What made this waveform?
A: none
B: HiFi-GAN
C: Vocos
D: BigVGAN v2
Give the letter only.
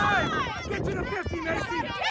A